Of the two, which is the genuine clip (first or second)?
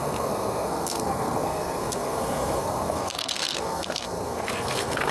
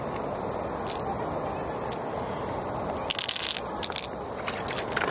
second